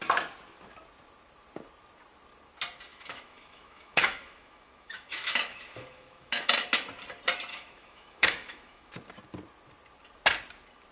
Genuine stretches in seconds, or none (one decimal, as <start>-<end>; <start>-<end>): 0.0-2.9; 6.5-7.5; 8.9-10.9